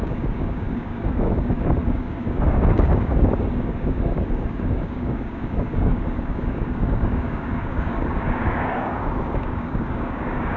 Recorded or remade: remade